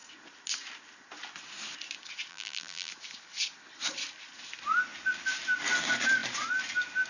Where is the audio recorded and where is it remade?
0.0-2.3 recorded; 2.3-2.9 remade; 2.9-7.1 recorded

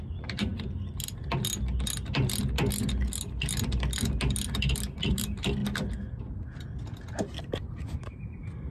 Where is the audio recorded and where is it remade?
0.0-0.5 remade; 0.5-5.1 recorded; 5.1-5.6 remade; 5.6-7.4 recorded; 7.4-8.7 remade

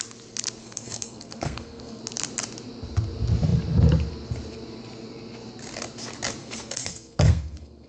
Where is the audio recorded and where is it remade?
0.0-0.6 recorded; 0.6-2.0 remade; 2.0-6.4 recorded; 6.4-7.9 remade

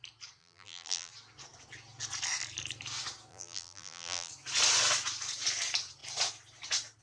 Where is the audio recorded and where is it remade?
0.0-0.4 recorded; 0.4-1.1 remade; 1.1-3.3 recorded; 3.3-4.3 remade; 4.3-7.0 recorded